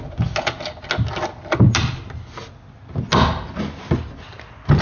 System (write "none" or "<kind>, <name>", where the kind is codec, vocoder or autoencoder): none